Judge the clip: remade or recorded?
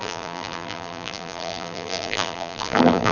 remade